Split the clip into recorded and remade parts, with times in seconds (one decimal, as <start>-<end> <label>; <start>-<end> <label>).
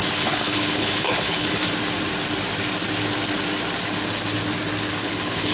0.0-1.6 remade; 1.6-4.9 recorded; 4.9-5.5 remade